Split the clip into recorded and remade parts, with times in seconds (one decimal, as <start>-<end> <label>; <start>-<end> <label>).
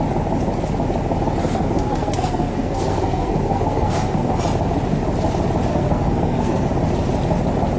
0.0-1.4 recorded; 1.4-4.3 remade; 4.3-5.7 recorded; 5.7-6.7 remade; 6.7-7.8 recorded